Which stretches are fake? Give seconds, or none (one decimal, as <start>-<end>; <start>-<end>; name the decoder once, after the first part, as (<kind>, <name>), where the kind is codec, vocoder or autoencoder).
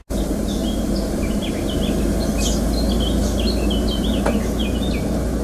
none